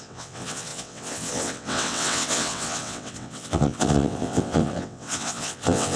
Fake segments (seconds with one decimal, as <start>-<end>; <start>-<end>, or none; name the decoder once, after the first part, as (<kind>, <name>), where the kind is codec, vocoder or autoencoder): 0.0-6.0 (vocoder, WaveNeXt)